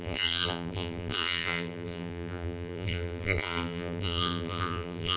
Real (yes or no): no